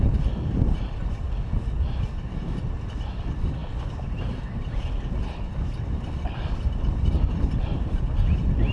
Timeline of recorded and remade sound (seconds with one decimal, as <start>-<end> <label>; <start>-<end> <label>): 0.0-8.7 recorded